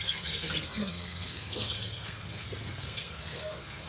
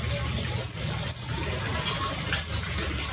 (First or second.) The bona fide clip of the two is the second